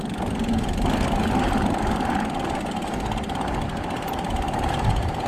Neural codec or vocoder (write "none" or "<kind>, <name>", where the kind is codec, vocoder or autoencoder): none